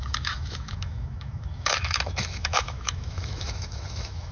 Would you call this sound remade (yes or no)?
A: yes